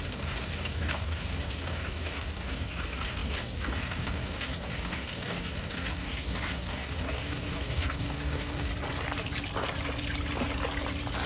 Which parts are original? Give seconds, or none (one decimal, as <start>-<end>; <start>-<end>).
8.7-11.3